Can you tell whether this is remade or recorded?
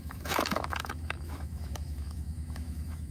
remade